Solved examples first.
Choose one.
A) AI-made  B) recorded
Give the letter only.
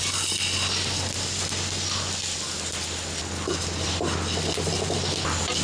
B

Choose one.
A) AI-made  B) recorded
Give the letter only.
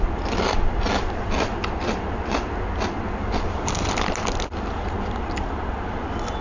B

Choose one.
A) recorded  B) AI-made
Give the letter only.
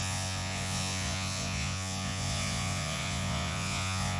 B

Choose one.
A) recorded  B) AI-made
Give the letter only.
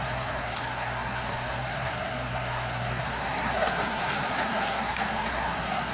B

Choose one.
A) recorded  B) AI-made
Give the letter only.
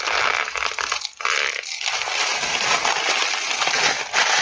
A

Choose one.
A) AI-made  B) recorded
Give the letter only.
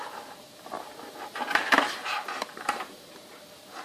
A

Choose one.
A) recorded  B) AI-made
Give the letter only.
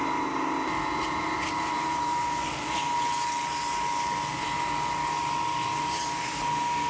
A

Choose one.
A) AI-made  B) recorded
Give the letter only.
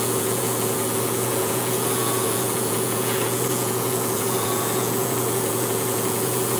A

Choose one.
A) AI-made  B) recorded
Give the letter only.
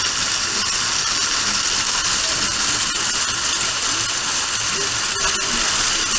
B